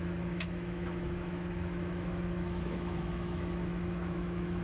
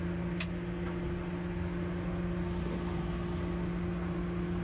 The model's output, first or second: first